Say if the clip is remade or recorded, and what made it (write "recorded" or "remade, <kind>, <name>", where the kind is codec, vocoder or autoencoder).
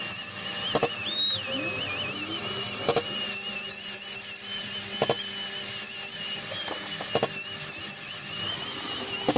recorded